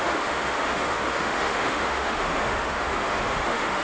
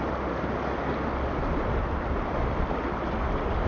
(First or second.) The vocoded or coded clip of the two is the first